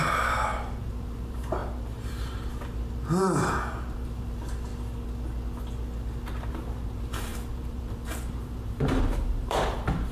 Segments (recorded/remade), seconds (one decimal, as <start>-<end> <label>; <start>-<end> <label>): 0.0-4.7 remade; 4.7-6.5 recorded; 6.5-10.1 remade